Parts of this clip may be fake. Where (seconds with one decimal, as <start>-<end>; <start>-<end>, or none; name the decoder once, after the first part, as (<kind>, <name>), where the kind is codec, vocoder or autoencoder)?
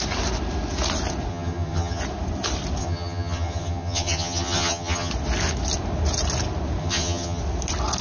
1.3-2.0 (vocoder, HiFi-GAN); 2.8-5.1; 6.8-7.4